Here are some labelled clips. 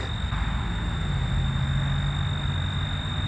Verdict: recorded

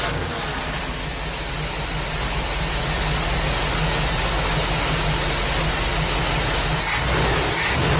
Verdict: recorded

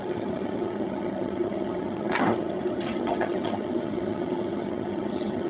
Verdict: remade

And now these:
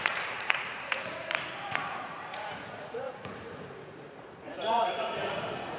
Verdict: remade